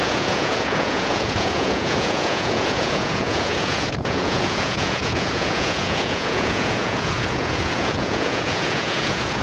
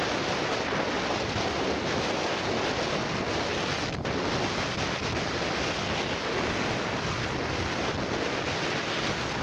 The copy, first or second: first